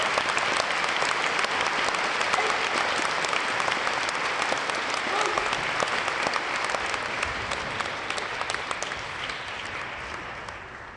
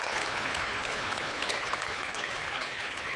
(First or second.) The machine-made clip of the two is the second